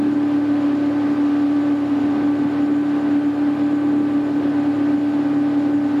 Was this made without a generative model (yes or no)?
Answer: yes